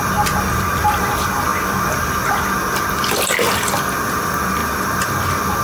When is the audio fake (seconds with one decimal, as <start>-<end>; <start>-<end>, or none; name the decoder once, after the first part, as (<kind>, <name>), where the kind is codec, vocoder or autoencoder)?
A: none